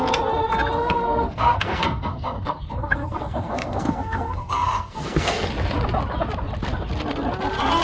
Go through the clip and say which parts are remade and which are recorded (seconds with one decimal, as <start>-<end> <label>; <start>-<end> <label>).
0.0-0.8 recorded; 0.8-5.5 remade; 5.5-7.8 recorded

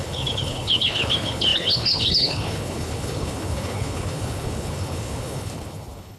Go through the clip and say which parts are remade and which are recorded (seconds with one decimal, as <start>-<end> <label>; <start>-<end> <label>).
0.0-6.2 remade

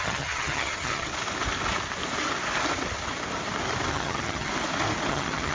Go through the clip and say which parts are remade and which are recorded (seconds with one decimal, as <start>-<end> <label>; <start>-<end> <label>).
0.0-1.1 remade; 1.1-3.9 recorded; 3.9-4.5 remade; 4.5-5.1 recorded; 5.1-5.5 remade

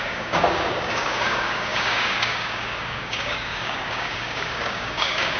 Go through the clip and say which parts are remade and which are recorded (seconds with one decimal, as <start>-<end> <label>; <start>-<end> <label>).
0.0-5.4 remade

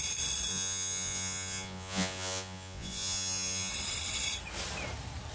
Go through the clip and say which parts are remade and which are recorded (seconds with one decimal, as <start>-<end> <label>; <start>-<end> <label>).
0.0-0.5 recorded; 0.5-3.7 remade; 3.7-5.3 recorded